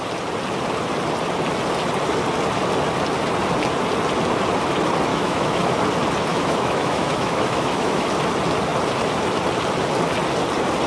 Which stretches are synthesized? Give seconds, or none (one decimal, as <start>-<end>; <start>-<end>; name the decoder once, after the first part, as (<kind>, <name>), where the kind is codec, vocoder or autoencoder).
5.1-5.7 (autoencoder, DAC-VAE); 6.3-8.1